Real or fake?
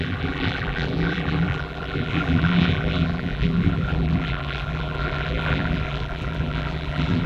fake